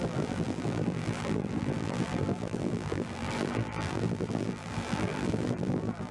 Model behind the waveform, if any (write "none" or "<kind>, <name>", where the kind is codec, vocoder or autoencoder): vocoder, BigVGAN v2